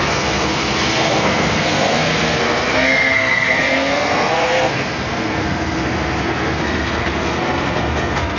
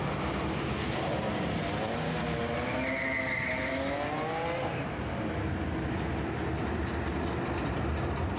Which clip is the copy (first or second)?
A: first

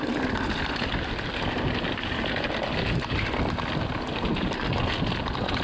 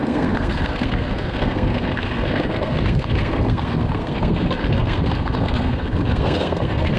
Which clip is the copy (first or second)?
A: second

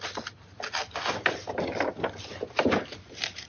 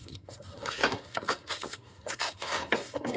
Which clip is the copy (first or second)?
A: second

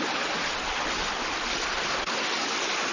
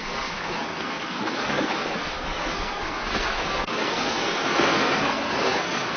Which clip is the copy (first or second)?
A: second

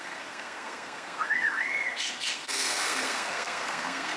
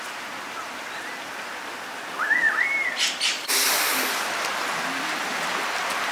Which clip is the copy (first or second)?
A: first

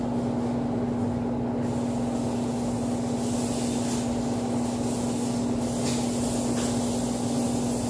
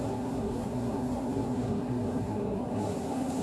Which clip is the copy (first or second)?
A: second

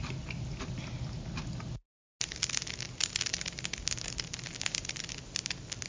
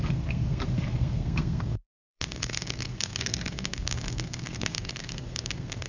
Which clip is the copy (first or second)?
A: second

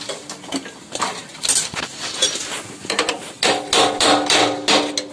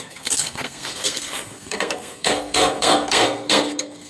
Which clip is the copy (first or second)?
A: second